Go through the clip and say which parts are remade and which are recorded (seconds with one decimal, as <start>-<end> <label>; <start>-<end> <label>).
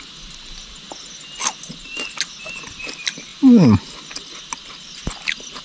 0.0-5.6 recorded